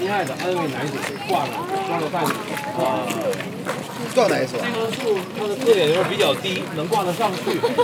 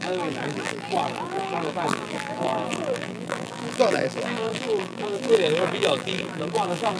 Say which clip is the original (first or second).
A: first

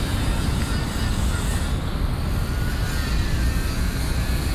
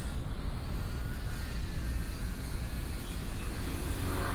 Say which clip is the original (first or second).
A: second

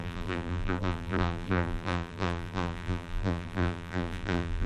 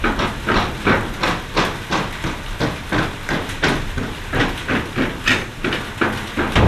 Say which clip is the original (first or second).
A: second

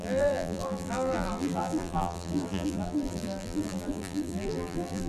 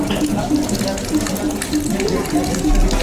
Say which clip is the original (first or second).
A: second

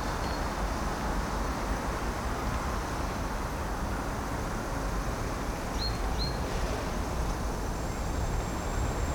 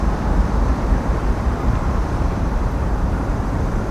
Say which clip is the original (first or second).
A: first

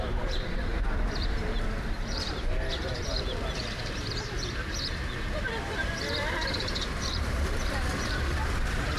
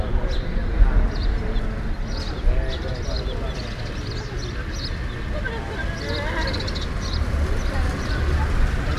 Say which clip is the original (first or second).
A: second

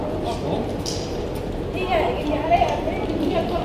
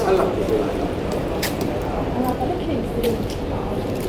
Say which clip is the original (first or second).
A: first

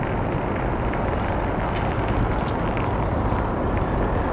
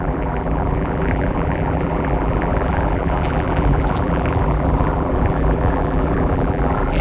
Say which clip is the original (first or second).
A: first